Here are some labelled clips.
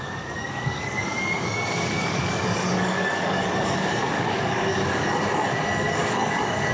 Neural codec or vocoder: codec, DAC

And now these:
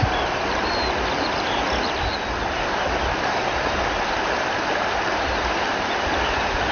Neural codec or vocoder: none